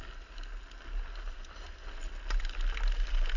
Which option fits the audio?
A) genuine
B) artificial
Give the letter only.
A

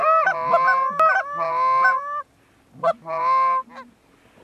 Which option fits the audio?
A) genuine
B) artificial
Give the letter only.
A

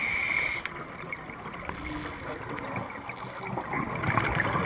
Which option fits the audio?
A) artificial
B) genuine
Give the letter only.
B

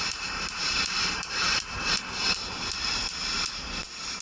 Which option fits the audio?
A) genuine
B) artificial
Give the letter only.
B